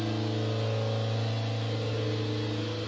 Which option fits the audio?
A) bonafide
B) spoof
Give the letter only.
A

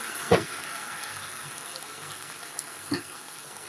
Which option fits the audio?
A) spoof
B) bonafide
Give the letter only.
A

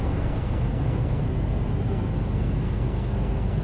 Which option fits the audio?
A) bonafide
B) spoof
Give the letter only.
B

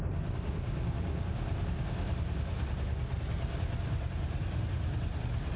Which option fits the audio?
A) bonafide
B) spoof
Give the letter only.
A